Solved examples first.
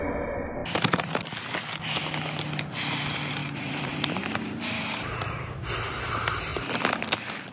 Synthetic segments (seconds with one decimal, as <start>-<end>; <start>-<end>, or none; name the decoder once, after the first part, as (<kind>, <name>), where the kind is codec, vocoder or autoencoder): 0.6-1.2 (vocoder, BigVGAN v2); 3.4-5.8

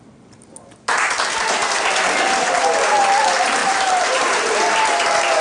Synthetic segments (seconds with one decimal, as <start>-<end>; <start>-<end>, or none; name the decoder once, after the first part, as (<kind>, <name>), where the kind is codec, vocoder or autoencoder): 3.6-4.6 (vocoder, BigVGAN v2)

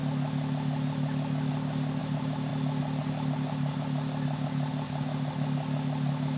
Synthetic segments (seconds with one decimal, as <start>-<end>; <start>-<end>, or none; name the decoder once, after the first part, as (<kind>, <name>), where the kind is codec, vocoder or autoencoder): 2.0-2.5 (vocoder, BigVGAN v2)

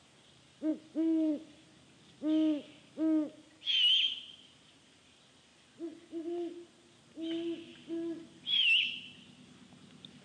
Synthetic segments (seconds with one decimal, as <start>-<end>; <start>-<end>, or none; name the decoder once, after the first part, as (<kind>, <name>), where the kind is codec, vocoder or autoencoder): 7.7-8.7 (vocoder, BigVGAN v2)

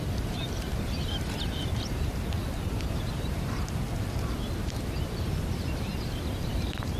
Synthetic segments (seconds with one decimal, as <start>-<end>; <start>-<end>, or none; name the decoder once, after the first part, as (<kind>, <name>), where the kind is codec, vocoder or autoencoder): 0.0-5.9 (vocoder, BigVGAN v2); 6.5-7.0

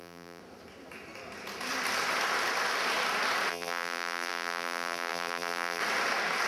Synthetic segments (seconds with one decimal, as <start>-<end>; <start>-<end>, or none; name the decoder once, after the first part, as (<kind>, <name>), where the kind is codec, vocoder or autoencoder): 0.0-0.4 (vocoder, BigVGAN v2); 3.5-5.8